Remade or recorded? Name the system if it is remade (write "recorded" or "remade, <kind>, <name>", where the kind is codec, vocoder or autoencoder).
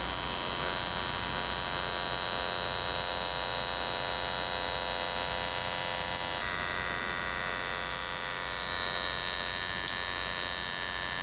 recorded